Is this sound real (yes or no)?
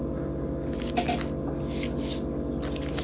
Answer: yes